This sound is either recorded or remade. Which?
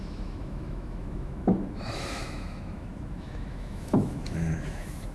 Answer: remade